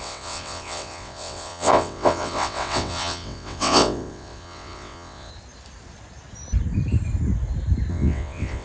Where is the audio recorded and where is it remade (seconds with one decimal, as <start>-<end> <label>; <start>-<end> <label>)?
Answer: 0.0-5.3 remade; 5.3-7.9 recorded; 7.9-8.6 remade